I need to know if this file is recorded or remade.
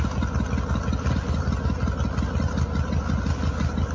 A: recorded